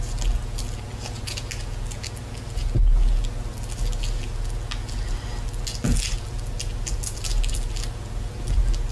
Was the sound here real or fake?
real